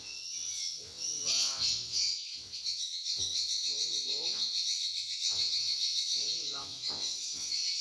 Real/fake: fake